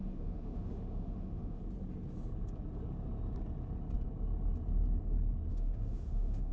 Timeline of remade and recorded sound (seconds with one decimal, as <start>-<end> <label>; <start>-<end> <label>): 0.0-1.6 remade; 1.6-5.5 recorded; 5.5-6.5 remade